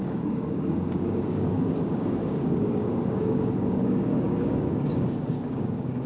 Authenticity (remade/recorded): remade